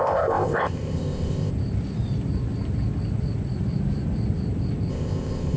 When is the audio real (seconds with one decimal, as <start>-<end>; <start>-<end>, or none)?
1.5-4.9